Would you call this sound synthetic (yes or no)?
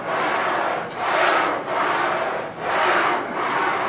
no